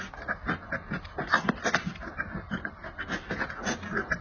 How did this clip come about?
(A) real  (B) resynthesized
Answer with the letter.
A